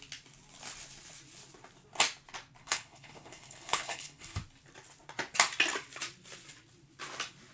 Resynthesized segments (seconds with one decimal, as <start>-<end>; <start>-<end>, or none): 2.6-4.4